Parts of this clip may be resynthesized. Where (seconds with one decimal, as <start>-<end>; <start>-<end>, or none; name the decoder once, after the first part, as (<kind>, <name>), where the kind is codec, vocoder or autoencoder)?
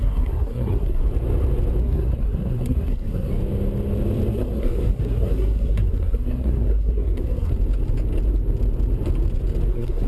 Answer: 0.0-1.0 (codec, SNAC); 1.8-3.3; 4.3-7.5; 9.7-10.1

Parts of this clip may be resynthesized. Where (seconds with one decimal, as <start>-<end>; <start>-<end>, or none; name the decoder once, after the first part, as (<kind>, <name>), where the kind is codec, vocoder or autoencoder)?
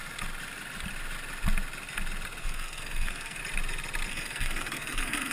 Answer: 2.4-3.4 (codec, SNAC); 4.1-5.3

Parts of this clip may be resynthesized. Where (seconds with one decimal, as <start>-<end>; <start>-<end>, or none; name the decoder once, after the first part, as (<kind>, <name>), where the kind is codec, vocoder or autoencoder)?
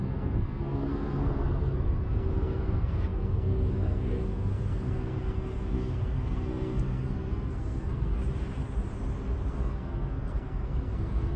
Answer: 0.0-8.2 (codec, SNAC); 9.5-11.4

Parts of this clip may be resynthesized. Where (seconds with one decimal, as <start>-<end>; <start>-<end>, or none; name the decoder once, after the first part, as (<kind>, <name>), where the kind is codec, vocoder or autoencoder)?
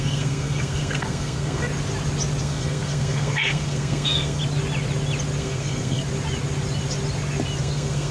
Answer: 0.0-1.6 (codec, SNAC); 2.4-4.4; 5.4-6.0; 7.6-8.1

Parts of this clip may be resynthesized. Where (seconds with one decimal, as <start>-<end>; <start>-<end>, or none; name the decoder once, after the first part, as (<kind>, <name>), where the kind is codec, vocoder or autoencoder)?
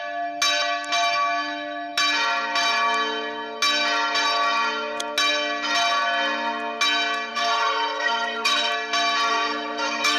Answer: 7.3-8.7 (codec, SNAC); 9.3-10.2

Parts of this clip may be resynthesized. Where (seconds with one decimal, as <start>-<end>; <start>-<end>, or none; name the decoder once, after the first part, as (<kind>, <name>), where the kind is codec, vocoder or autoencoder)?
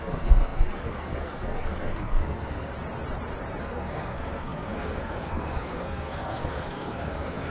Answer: 0.0-2.7 (codec, SNAC); 3.6-7.5